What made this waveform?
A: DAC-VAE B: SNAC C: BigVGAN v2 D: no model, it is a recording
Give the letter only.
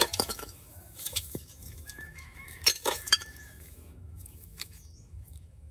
A